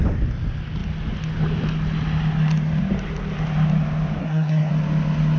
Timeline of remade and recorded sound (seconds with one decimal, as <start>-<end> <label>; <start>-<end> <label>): 0.0-4.2 recorded; 4.2-4.7 remade; 4.7-5.4 recorded